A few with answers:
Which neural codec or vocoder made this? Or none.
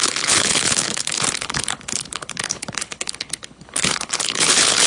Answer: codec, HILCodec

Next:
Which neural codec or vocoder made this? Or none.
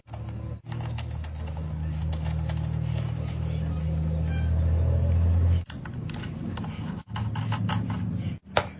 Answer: none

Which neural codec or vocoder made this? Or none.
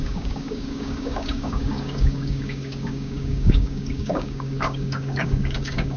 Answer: codec, DAC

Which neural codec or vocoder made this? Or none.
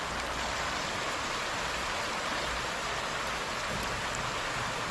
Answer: none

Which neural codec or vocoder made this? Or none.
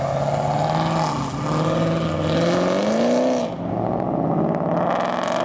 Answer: none